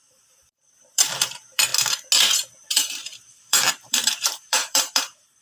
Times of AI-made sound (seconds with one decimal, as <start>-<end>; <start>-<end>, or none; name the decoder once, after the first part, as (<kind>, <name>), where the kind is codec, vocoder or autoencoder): 0.0-1.7 (vocoder, BigVGAN v2); 2.7-5.4